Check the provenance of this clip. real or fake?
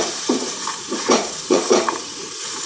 fake